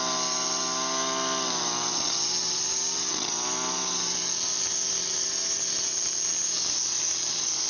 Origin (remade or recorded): recorded